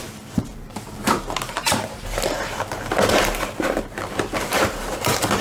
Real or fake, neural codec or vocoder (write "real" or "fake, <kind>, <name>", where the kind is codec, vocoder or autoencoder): fake, vocoder, BigVGAN v2